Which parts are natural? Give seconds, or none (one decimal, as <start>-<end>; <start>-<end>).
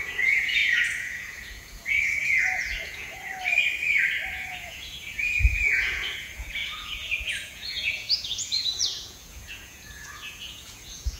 3.2-4.3